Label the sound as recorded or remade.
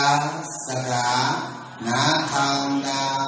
recorded